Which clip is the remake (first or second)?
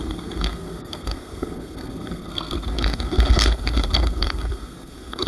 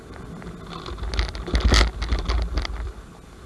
first